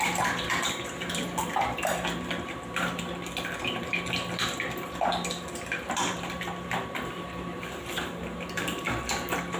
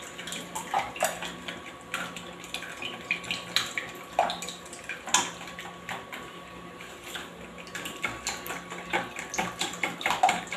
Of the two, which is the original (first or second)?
second